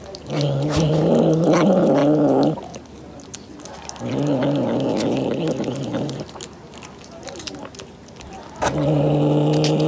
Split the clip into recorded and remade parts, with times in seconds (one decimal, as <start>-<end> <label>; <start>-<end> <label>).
0.0-9.9 recorded